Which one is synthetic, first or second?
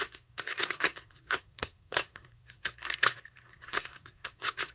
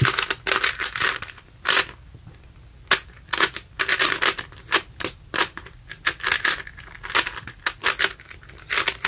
first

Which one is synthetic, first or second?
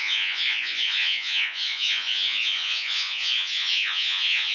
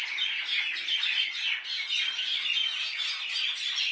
first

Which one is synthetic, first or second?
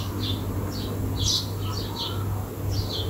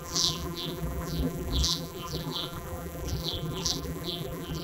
second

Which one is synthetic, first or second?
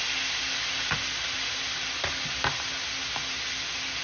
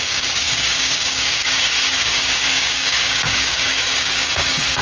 second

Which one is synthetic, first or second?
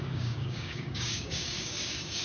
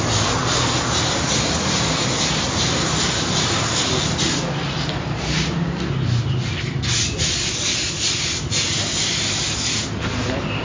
first